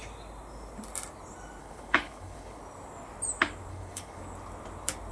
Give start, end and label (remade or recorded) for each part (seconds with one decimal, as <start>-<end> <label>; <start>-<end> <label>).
0.0-1.6 recorded; 1.6-2.6 remade; 2.6-3.7 recorded; 3.7-4.2 remade; 4.2-5.1 recorded

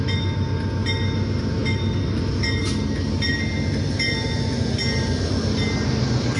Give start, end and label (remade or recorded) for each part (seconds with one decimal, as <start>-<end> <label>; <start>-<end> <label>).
0.0-6.4 recorded

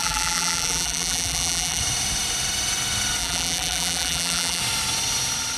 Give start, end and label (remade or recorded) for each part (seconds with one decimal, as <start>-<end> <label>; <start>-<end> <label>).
0.0-1.8 remade; 1.8-3.2 recorded; 3.2-4.6 remade; 4.6-5.6 recorded